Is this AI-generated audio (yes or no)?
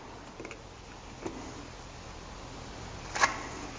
no